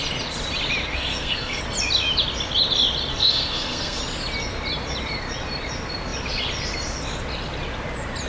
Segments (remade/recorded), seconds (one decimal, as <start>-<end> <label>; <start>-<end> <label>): 0.0-0.9 recorded; 0.9-1.6 remade; 1.6-3.1 recorded; 3.1-4.0 remade; 4.0-8.3 recorded